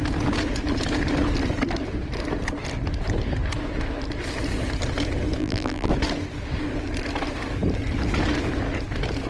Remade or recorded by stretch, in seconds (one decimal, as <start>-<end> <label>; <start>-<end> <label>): 0.0-5.4 recorded; 5.4-5.9 remade; 5.9-9.3 recorded